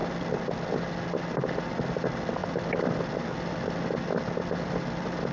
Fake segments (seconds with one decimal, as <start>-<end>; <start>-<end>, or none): none